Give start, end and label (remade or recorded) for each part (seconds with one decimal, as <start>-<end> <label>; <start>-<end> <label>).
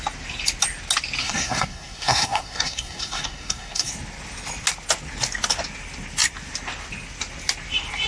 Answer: 0.0-1.2 recorded; 1.2-3.9 remade; 3.9-8.1 recorded